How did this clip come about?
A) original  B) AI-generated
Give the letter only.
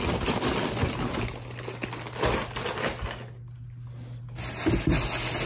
A